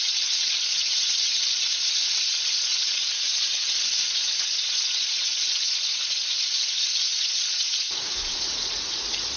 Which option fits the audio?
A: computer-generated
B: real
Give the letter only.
A